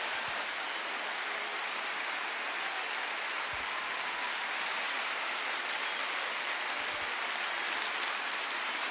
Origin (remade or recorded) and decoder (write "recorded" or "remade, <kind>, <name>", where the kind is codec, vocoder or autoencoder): recorded